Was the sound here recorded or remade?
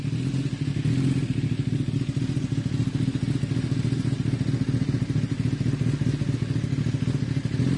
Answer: recorded